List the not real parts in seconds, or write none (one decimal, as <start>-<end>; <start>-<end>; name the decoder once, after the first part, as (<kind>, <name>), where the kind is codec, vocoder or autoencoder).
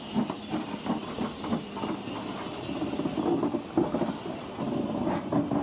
none